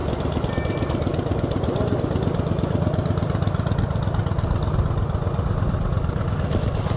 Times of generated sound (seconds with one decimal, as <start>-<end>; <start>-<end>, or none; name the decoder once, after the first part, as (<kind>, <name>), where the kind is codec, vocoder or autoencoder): none